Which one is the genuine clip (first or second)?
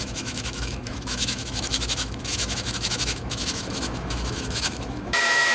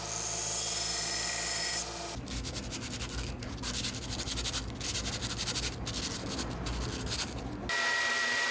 second